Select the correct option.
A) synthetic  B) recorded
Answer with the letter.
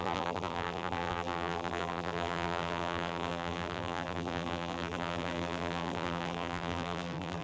A